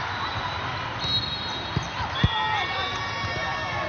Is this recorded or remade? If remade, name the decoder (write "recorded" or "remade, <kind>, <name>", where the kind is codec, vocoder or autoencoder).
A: recorded